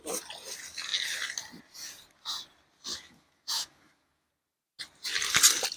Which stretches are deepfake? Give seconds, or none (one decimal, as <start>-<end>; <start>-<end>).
2.9-4.3